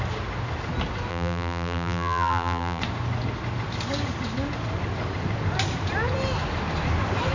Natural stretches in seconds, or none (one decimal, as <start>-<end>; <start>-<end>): 0.0-1.1; 2.8-7.3